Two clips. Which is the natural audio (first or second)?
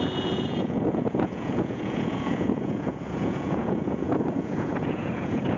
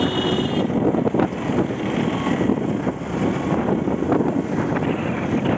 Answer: second